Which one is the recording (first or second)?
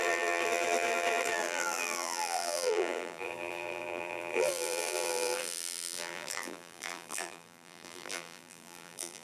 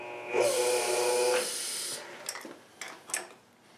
second